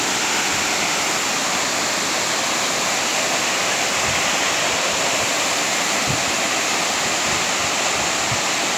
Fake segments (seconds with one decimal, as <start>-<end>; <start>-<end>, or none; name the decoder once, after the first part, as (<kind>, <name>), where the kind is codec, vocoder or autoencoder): none